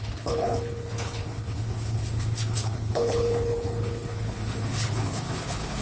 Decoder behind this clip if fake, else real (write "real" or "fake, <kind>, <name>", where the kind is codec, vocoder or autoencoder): fake, codec, HILCodec